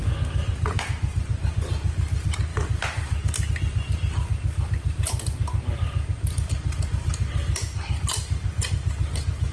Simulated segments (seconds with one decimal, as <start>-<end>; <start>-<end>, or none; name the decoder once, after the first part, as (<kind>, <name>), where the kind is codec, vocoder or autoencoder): none